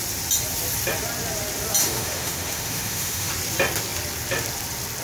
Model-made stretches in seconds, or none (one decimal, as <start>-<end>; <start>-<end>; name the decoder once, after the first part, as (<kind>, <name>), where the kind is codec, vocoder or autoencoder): 1.8-3.3 (autoencoder, DAC-VAE)